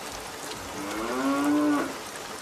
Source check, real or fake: real